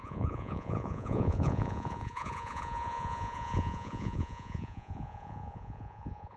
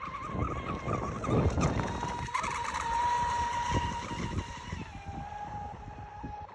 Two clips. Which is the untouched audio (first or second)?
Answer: second